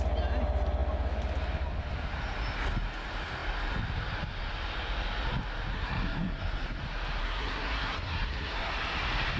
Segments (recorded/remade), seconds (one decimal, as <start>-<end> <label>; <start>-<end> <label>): 0.0-5.7 recorded; 5.7-6.8 remade; 6.8-7.2 recorded; 7.2-8.7 remade; 8.7-9.4 recorded